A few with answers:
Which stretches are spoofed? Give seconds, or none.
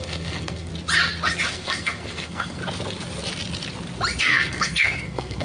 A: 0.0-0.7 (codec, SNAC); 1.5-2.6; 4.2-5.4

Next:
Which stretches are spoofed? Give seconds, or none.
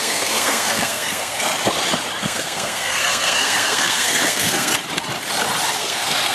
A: 0.0-1.5 (codec, SNAC); 2.2-4.7; 5.8-6.3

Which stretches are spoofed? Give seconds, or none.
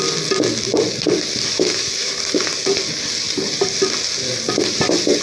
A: 1.5-2.1 (autoencoder, DAC-VAE)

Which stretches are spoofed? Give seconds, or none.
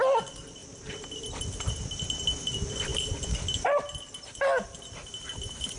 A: none